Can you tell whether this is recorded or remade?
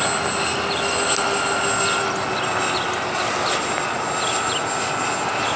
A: recorded